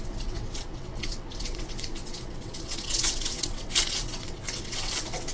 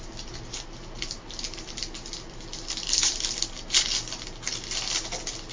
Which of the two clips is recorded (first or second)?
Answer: second